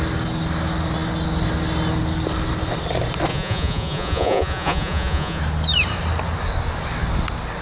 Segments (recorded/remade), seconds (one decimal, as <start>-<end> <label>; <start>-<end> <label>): 0.0-3.3 recorded; 3.3-5.4 remade; 5.4-7.6 recorded